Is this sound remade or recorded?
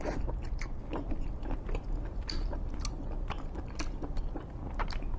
recorded